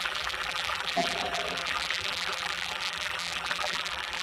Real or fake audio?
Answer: fake